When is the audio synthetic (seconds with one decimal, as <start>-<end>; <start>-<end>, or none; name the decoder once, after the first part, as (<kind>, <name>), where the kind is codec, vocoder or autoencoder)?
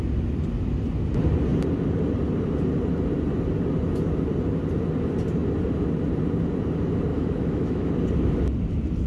7.1-7.9 (autoencoder, DAC-VAE)